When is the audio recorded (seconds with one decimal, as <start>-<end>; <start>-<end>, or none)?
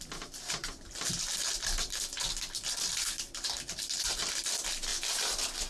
0.0-5.7